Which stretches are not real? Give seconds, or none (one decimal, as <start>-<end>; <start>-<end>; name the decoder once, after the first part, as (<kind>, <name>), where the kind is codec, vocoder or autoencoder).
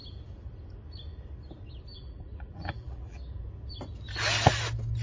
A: 1.9-3.4 (vocoder, BigVGAN v2)